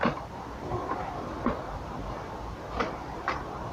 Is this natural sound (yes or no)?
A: no